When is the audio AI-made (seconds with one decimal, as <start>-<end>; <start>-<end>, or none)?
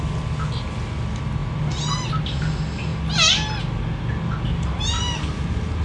none